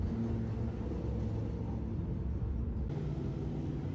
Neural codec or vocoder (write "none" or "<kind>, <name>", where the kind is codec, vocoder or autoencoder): none